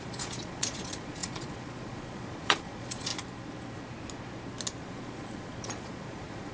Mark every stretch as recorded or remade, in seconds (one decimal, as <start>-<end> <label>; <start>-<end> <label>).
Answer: 0.0-3.1 remade; 3.1-4.8 recorded; 4.8-6.5 remade